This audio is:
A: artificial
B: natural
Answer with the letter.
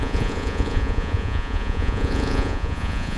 A